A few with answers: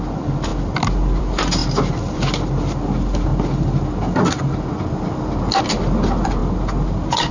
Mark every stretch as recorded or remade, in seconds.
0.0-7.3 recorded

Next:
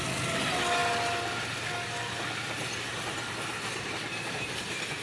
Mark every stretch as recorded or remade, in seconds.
0.0-5.0 recorded

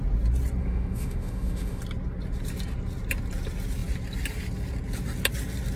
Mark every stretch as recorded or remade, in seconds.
0.0-0.6 recorded; 0.6-1.8 remade; 1.8-5.8 recorded

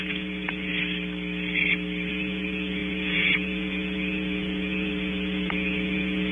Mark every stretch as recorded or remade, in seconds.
0.0-0.7 remade; 0.7-2.1 recorded; 2.1-6.3 remade

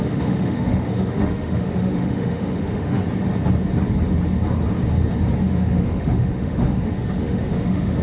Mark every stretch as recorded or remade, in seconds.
0.0-3.0 remade; 3.0-5.4 recorded; 5.4-8.0 remade

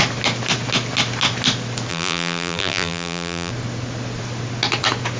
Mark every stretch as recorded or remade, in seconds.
0.0-1.9 recorded; 1.9-3.5 remade; 3.5-5.2 recorded